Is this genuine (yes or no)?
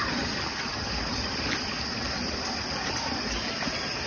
yes